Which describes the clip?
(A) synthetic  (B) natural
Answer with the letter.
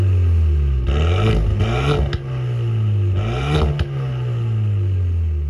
B